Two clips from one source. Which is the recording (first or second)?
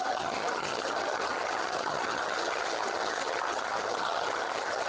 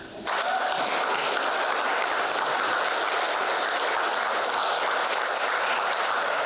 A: second